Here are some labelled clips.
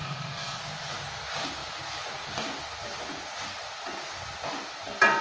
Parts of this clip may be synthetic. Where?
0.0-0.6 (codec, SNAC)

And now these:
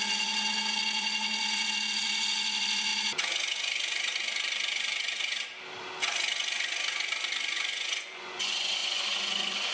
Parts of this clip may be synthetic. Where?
0.0-2.9 (vocoder, Vocos); 7.7-9.7